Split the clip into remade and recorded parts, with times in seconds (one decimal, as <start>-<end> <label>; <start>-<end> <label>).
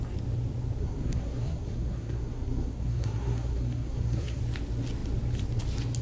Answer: 0.0-0.8 recorded; 0.8-4.4 remade; 4.4-6.0 recorded